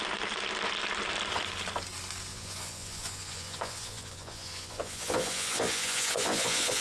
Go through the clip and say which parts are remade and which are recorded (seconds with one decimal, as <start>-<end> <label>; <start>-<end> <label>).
0.0-2.3 recorded; 2.3-6.8 remade